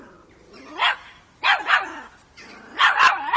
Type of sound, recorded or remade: recorded